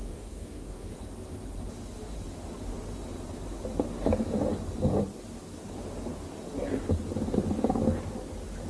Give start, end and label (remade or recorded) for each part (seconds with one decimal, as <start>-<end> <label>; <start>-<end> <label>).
0.0-0.9 remade; 0.9-8.7 recorded